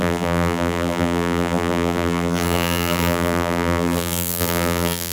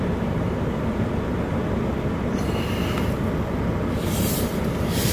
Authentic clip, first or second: second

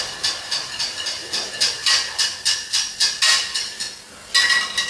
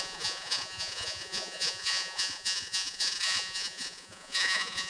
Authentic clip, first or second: first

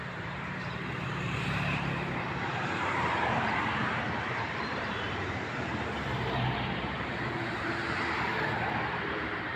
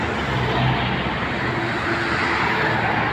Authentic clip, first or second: second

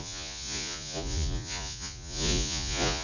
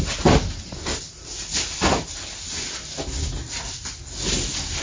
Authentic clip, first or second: second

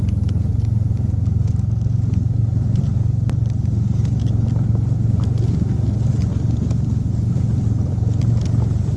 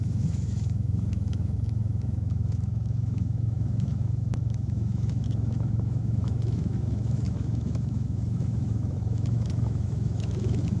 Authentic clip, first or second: first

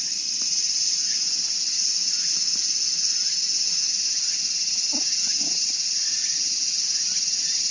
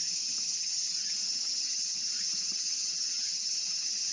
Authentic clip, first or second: first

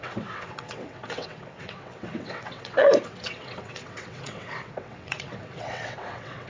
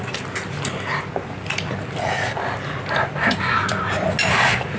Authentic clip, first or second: second